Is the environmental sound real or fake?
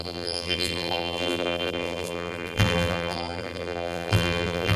fake